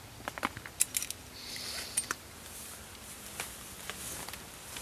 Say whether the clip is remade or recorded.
recorded